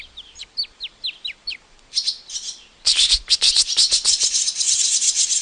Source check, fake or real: real